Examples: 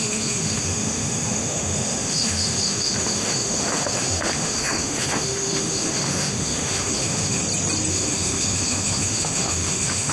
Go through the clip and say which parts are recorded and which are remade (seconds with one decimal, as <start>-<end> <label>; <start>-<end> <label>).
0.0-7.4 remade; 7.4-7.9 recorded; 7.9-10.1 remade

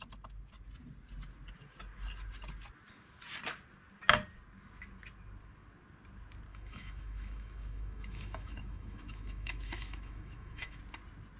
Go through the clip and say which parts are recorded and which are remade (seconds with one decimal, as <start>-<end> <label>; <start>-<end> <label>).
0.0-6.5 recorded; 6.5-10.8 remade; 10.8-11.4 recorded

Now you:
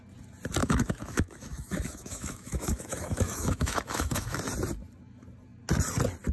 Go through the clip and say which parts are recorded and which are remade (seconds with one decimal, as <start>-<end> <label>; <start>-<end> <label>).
0.0-0.6 recorded; 0.6-4.4 remade; 4.4-6.3 recorded